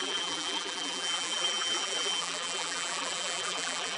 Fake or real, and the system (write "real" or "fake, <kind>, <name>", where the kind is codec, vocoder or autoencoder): fake, vocoder, BigVGAN v2